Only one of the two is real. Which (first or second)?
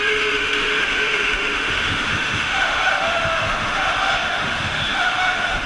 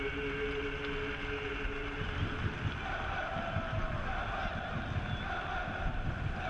second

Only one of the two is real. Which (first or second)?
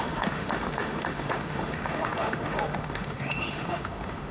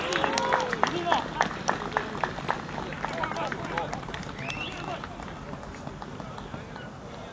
second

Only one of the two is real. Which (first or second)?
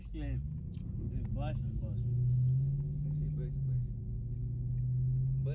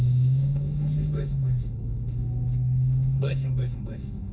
first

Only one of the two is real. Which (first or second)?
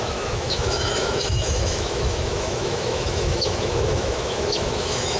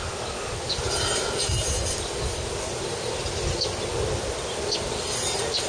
second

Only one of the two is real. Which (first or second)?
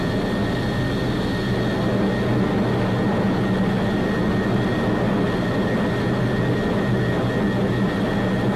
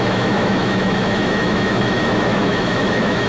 first